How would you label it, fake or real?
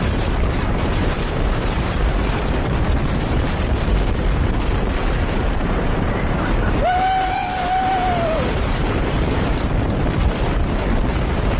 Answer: fake